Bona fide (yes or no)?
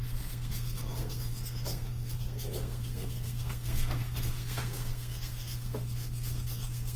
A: no